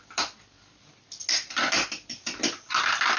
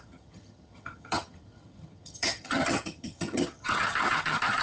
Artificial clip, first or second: second